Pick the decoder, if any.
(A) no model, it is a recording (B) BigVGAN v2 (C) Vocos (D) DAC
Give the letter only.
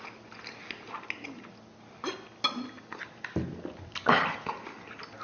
A